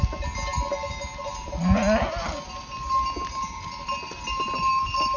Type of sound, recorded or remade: recorded